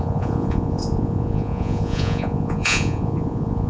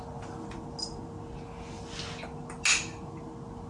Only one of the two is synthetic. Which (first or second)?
first